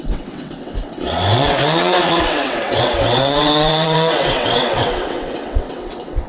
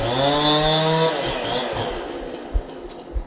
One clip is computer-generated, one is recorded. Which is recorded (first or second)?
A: second